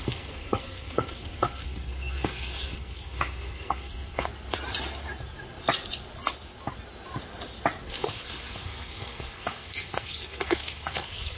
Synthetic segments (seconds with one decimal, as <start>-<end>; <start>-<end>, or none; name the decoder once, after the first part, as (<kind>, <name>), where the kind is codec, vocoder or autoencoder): 0.0-4.3 (codec, SNAC); 7.8-11.4